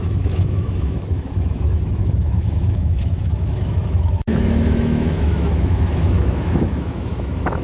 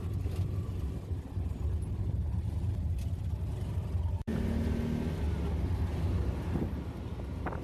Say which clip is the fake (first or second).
first